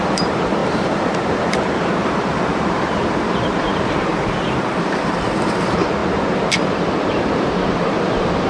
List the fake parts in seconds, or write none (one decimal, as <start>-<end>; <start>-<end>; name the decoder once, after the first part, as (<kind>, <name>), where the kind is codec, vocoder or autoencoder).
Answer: 0.0-4.1 (vocoder, BigVGAN v2); 4.8-8.5